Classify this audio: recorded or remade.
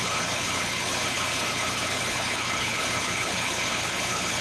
remade